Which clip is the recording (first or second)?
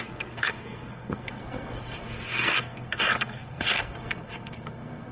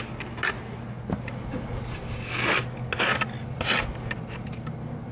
second